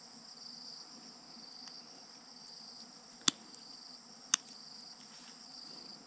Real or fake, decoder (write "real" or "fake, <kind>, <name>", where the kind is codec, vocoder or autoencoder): real